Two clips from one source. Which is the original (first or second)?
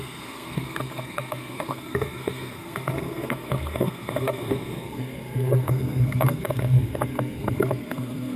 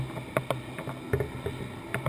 second